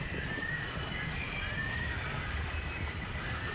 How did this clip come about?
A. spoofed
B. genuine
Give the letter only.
B